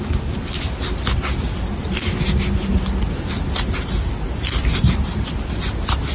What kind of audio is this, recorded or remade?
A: recorded